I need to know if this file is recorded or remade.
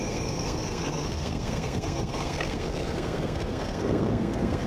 remade